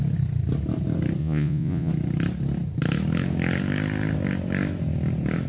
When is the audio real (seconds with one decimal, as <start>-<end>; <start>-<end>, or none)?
0.0-1.2; 1.9-5.5